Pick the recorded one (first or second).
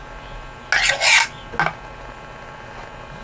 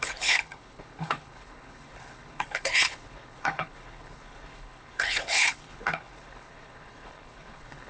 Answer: first